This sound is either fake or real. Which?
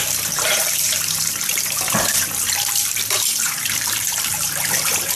fake